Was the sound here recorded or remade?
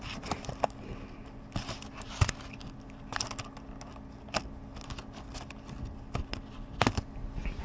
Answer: recorded